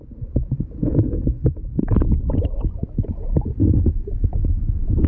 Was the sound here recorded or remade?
recorded